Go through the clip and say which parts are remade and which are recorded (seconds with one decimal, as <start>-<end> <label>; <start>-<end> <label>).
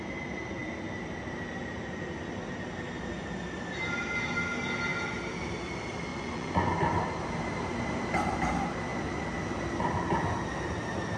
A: 0.0-6.1 recorded; 6.1-6.7 remade; 6.7-11.2 recorded